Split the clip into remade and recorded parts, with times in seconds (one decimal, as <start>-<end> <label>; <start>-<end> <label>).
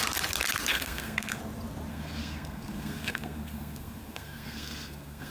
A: 0.0-0.7 recorded; 0.7-1.4 remade; 1.4-1.9 recorded; 1.9-5.3 remade